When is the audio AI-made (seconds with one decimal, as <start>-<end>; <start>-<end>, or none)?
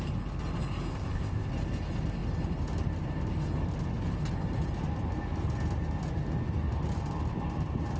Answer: 0.9-1.5